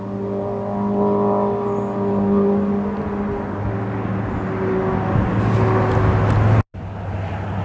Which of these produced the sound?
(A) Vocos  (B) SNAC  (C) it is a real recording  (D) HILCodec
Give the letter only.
C